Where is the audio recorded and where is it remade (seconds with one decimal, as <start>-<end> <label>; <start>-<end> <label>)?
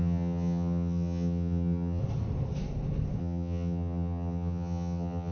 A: 0.0-2.0 remade; 2.0-3.2 recorded; 3.2-5.3 remade